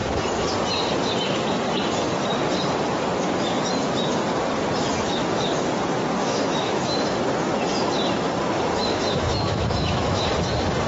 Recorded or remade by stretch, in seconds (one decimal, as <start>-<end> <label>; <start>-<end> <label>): 0.0-6.2 recorded; 6.2-7.2 remade; 7.2-8.8 recorded; 8.8-10.2 remade; 10.2-10.9 recorded